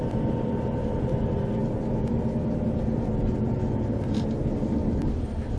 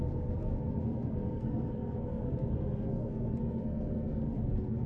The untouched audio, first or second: first